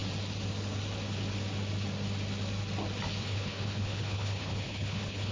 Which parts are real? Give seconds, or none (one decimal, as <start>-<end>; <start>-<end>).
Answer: 0.0-3.2